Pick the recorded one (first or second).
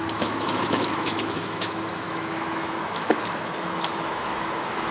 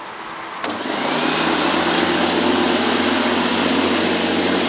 second